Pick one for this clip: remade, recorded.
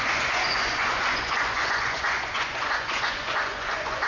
remade